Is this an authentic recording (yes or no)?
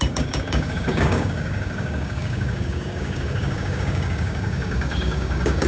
no